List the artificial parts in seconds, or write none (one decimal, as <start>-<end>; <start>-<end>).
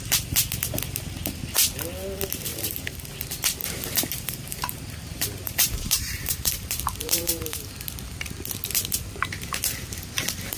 2.5-3.1; 3.6-7.7